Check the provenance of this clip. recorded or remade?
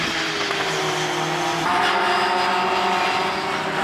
recorded